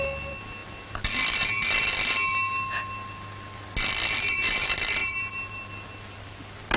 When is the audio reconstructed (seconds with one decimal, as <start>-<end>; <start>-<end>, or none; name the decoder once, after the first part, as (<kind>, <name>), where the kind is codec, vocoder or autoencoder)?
none